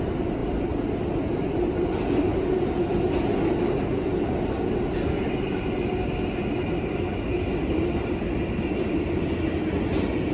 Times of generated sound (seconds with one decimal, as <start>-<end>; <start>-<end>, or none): none